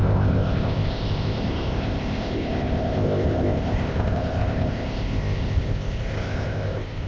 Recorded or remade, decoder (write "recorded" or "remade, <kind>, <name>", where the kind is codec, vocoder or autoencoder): remade, codec, ZipCodec